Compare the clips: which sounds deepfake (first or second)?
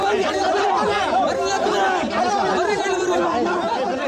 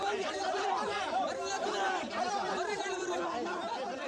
second